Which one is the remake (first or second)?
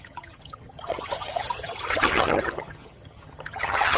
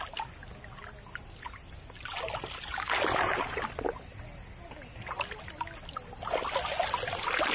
first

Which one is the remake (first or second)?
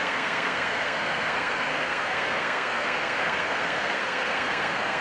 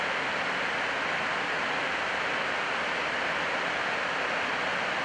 first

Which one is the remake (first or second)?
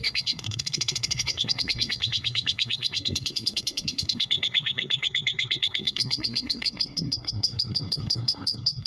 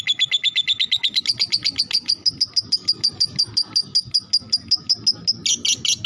first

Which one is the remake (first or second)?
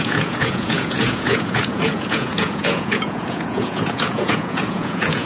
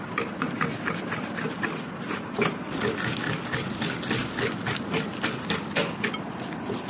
first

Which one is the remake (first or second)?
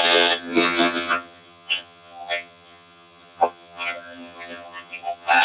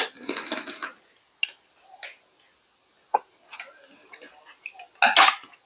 first